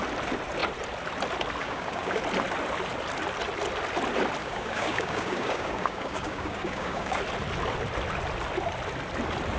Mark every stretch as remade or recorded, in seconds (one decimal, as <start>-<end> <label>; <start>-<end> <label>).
0.0-1.6 recorded; 1.6-2.2 remade; 2.2-4.4 recorded; 4.4-7.2 remade; 7.2-9.6 recorded